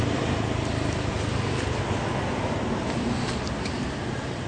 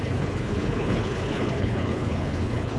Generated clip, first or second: second